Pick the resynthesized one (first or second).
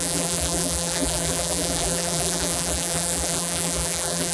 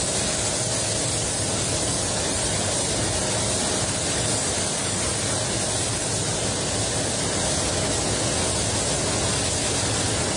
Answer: first